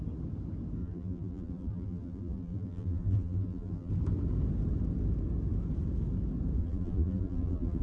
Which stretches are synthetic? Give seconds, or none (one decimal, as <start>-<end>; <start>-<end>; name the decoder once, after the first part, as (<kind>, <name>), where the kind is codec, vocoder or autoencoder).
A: 0.8-3.9 (vocoder, BigVGAN v2); 6.6-7.8